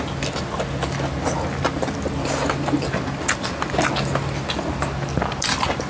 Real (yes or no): yes